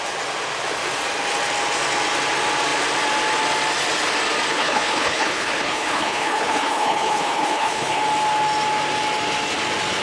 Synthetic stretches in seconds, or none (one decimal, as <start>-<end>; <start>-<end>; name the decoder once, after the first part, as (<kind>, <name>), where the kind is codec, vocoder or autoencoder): 4.5-8.0 (codec, HILCodec)